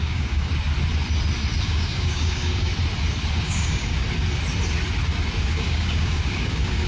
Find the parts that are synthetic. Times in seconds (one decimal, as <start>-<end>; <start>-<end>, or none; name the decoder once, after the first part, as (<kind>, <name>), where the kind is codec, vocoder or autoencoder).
0.0-0.5 (codec, DAC); 1.6-2.7; 3.4-3.9; 5.4-6.9